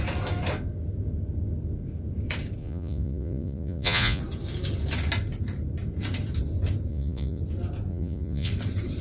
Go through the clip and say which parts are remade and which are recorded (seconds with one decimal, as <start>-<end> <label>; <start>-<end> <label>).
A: 0.0-2.6 recorded; 2.6-4.2 remade; 4.2-6.9 recorded; 6.9-7.4 remade; 7.4-7.9 recorded; 7.9-8.5 remade; 8.5-9.0 recorded

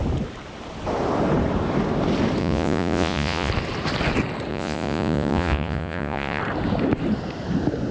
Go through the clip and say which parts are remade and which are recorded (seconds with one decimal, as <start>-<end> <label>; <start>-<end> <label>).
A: 0.0-2.4 recorded; 2.4-3.5 remade; 3.5-4.5 recorded; 4.5-6.4 remade; 6.4-7.9 recorded